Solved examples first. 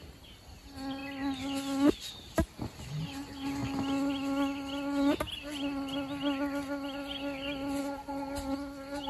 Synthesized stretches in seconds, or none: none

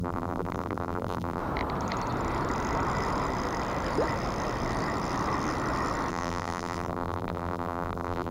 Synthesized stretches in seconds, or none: 0.0-1.4 (vocoder, BigVGAN v2); 6.1-8.3

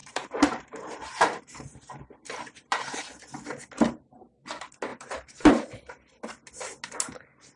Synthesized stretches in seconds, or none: 0.0-3.2 (vocoder, BigVGAN v2); 4.9-5.5

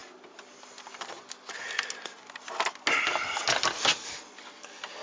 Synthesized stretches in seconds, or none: none

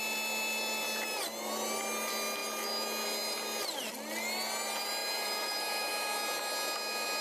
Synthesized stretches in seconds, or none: 5.0-5.9 (vocoder, BigVGAN v2)